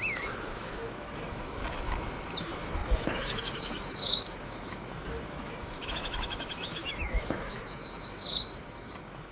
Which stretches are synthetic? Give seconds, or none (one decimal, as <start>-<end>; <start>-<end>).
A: 0.0-1.6; 2.4-9.3